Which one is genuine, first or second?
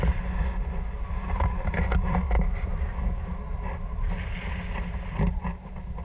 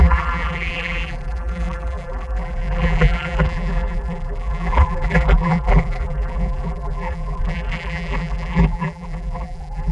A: first